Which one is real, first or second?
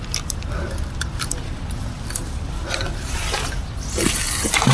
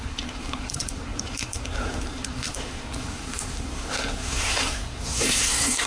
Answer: first